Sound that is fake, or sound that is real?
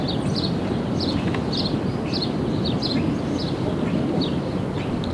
real